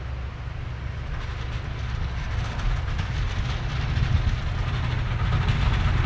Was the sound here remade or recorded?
recorded